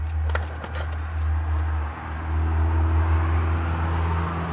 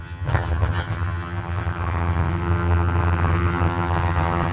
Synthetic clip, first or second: second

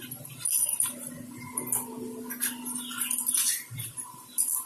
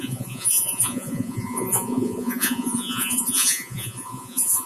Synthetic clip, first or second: second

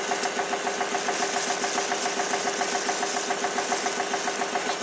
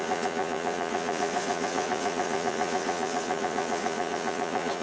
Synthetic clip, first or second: second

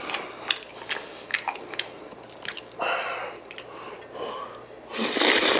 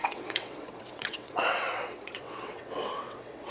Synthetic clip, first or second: second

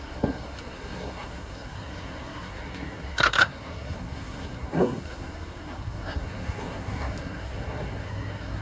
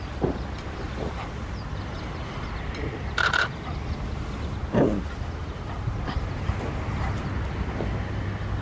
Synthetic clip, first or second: first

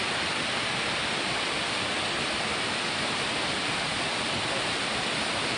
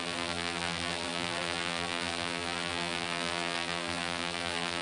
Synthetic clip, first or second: second